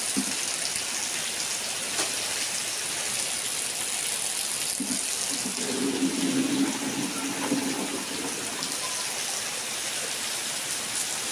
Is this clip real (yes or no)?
yes